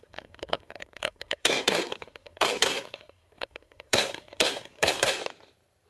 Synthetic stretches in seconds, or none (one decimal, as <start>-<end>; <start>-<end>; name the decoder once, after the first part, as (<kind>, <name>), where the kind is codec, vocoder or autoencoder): 0.0-5.2 (codec, SNAC)